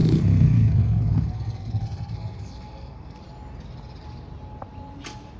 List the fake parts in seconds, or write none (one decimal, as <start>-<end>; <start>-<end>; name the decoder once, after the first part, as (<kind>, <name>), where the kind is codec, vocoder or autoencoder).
0.0-3.2 (codec, SNAC)